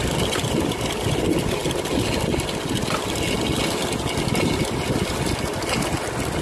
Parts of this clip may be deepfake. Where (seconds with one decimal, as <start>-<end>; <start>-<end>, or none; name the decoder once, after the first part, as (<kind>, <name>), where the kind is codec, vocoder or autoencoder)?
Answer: none